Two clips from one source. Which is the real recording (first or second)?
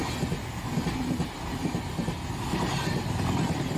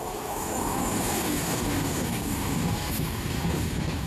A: first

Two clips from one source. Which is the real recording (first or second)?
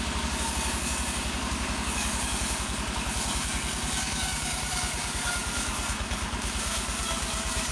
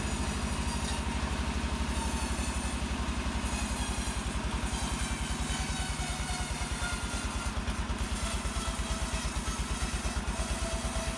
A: second